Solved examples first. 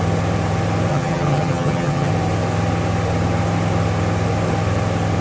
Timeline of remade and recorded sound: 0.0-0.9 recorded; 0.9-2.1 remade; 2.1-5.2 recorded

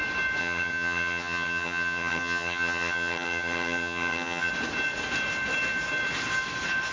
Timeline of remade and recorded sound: 0.0-0.4 recorded; 0.4-4.5 remade; 4.5-6.9 recorded

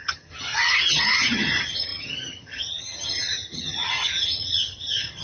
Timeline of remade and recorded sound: 0.0-5.2 remade